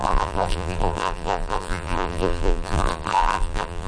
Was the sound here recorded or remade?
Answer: remade